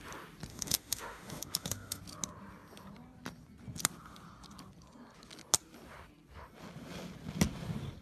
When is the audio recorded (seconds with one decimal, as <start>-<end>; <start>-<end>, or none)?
0.0-0.5; 2.0-8.0

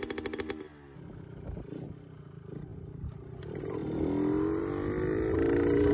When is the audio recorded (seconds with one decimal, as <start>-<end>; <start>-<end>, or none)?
0.0-5.9

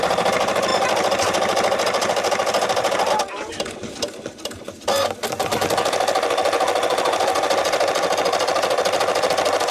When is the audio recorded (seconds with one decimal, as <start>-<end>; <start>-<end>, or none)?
0.0-9.7

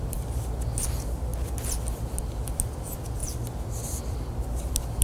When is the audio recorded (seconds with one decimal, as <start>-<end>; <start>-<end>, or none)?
0.0-5.0

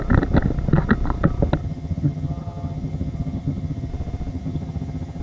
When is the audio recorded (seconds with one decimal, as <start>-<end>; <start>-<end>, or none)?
0.0-1.6; 3.9-4.3

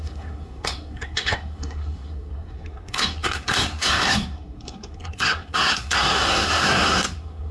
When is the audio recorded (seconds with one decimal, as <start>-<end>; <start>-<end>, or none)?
none